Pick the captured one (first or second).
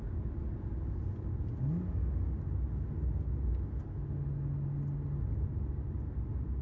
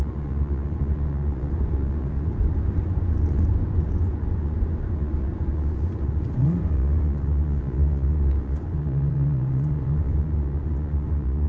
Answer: first